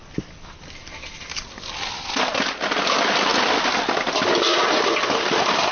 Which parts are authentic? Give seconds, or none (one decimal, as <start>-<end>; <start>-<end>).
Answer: 0.0-5.7